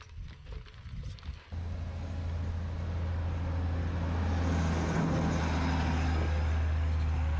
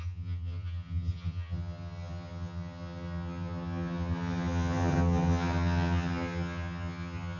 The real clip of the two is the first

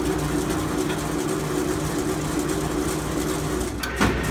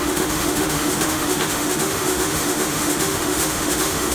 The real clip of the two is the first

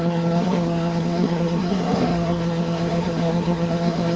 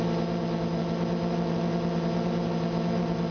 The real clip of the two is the second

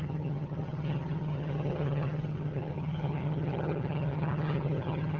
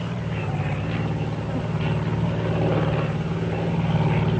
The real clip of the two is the second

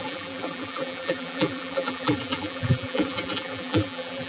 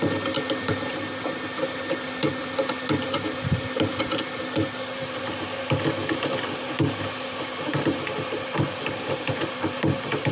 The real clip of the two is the second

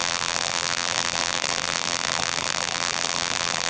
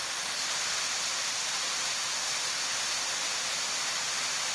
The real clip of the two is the second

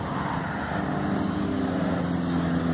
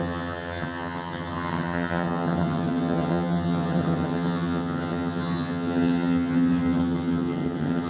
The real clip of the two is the first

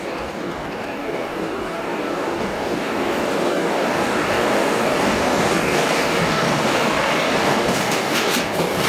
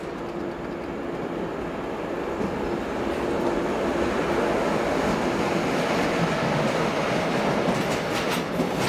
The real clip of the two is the second